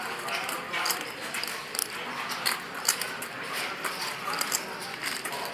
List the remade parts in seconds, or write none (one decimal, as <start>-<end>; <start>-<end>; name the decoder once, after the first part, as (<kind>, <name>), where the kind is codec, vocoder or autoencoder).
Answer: 0.0-1.8 (vocoder, BigVGAN v2); 2.8-5.5

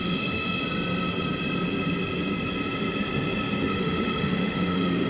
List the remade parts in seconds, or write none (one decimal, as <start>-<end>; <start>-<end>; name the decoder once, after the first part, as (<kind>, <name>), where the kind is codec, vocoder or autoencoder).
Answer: 0.0-0.6 (autoencoder, DAC-VAE); 3.7-5.1

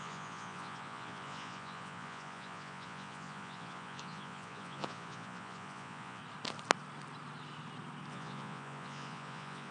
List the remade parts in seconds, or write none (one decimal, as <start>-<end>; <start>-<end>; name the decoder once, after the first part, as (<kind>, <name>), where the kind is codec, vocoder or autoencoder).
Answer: 0.0-6.2 (vocoder, Vocos); 8.1-9.7

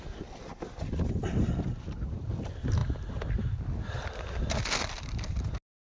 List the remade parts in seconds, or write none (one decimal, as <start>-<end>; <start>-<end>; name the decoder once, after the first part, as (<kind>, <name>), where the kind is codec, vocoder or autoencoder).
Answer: none

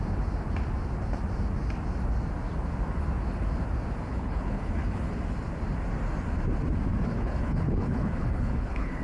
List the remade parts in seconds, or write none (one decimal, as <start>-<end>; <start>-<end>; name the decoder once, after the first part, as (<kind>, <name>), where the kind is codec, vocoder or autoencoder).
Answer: 4.1-5.1 (codec, HILCodec); 7.1-9.0

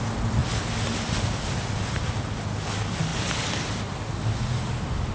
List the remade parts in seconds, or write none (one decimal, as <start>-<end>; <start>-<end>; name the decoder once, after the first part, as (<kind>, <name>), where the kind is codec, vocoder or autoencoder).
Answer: none

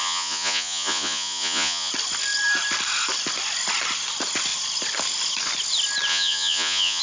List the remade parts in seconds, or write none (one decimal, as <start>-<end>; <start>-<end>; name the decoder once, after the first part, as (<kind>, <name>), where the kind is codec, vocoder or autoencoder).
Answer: 0.0-1.9 (vocoder, Vocos); 6.1-7.0

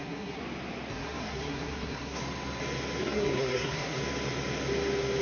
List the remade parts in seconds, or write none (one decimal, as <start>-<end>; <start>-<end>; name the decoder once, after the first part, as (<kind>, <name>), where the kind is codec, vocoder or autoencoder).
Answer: 0.0-0.4 (codec, SNAC); 0.9-2.2; 3.0-4.0